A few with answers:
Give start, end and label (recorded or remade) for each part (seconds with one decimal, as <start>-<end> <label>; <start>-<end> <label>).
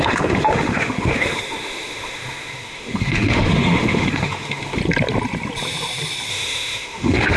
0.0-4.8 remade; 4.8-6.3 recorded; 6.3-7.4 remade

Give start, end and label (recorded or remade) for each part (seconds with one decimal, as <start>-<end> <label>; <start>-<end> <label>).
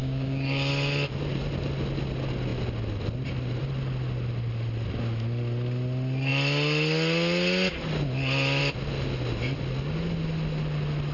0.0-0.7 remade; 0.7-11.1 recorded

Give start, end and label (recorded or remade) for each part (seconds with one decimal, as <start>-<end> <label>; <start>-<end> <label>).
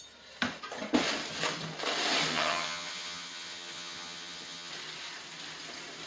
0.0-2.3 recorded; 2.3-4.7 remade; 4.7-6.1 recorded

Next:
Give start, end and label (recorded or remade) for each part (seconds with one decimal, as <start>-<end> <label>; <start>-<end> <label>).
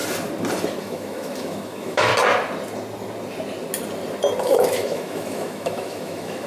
0.0-0.8 recorded; 0.8-2.1 remade; 2.1-4.4 recorded; 4.4-6.5 remade